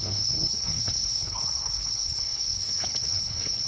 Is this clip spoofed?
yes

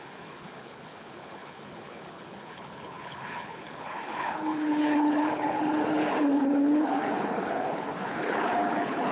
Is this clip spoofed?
yes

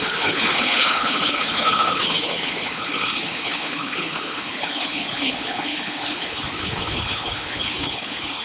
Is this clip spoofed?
yes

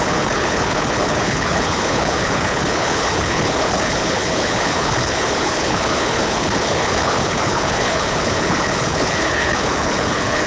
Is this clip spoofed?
yes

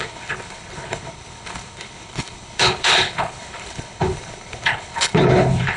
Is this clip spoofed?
yes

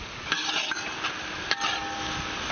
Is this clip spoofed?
no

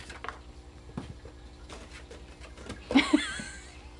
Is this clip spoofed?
no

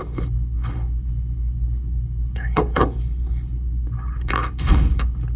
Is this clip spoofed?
yes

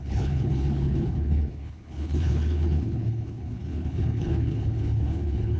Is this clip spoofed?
yes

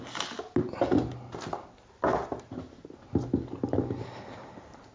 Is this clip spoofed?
no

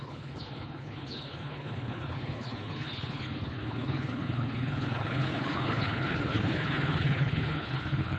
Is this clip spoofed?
yes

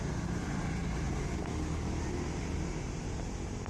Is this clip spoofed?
no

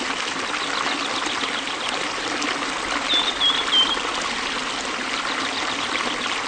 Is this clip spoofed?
no